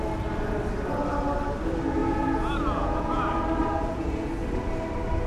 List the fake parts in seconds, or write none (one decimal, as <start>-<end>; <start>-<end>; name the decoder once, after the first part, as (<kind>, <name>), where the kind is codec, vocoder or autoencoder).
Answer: 2.0-3.2 (vocoder, Vocos); 3.6-4.3